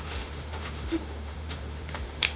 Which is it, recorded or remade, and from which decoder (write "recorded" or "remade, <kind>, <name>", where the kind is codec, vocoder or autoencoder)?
remade, autoencoder, DAC-VAE